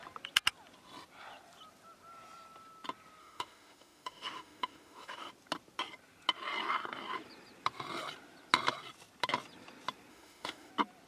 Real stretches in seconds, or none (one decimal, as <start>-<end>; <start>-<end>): 0.0-3.2; 5.3-10.1; 10.7-11.1

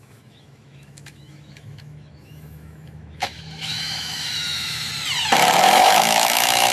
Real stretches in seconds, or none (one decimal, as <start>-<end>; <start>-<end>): 4.9-5.6

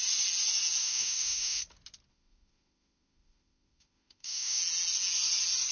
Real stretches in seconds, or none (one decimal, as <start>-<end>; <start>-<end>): 0.0-0.8; 1.6-2.1; 4.6-5.7

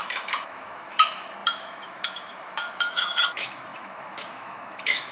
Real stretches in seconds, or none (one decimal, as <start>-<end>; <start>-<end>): none

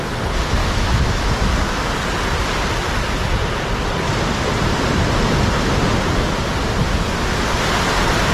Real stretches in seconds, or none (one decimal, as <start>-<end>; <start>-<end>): 0.0-0.6; 1.2-8.3

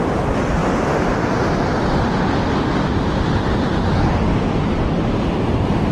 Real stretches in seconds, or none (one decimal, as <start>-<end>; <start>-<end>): 0.0-5.9